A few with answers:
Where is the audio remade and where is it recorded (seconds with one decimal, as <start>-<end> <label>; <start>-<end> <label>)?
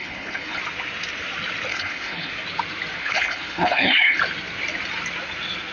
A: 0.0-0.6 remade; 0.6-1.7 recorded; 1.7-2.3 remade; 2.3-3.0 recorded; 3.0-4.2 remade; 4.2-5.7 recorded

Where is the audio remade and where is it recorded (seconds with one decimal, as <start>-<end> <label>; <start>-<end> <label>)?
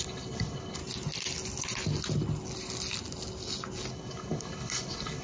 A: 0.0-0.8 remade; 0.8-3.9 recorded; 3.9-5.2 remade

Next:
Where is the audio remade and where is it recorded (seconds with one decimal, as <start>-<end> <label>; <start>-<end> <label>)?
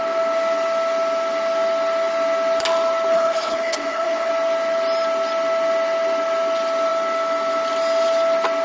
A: 0.0-3.1 recorded; 3.1-4.3 remade; 4.3-8.6 recorded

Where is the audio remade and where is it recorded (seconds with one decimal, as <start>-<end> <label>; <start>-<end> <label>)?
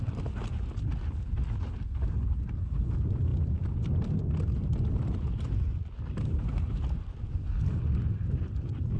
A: 0.0-9.0 recorded